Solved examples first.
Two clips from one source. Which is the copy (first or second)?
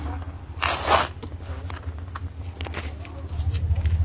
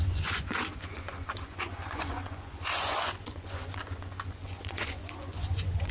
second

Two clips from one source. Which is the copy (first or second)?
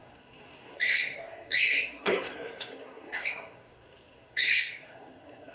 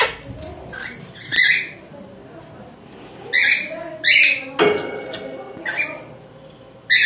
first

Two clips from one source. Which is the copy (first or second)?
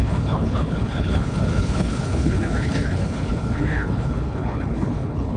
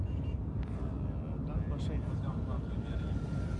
first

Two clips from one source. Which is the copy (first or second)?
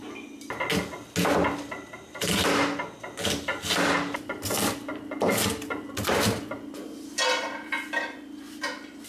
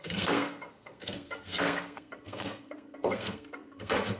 second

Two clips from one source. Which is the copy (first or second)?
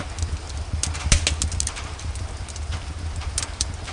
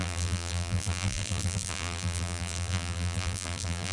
second